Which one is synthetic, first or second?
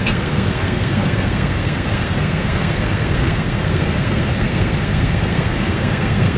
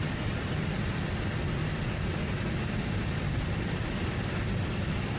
first